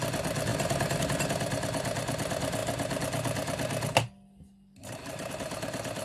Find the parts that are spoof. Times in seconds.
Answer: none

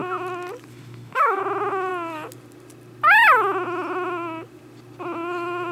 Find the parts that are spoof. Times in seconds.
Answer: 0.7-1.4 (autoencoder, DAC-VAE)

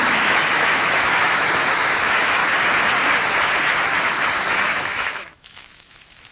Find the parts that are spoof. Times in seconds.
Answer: 0.0-2.4 (autoencoder, DAC-VAE); 4.5-6.3

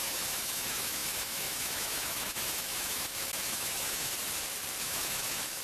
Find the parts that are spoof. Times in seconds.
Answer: 0.0-4.1 (autoencoder, DAC-VAE); 4.8-5.6

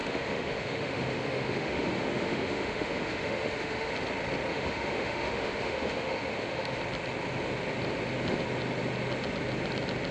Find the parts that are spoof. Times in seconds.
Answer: 0.0-3.9 (autoencoder, DAC-VAE); 4.5-6.8

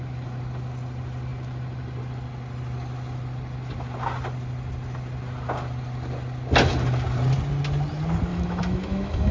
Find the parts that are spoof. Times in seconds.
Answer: 8.3-9.3 (autoencoder, DAC-VAE)

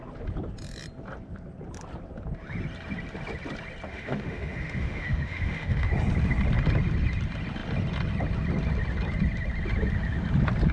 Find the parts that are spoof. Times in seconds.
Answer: 3.9-5.9 (autoencoder, DAC-VAE)